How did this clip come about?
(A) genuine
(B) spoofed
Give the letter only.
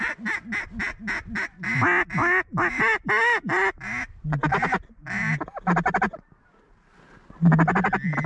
A